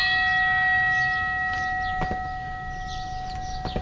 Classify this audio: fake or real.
real